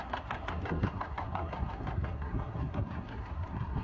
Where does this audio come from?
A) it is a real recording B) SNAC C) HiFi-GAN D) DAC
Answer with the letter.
B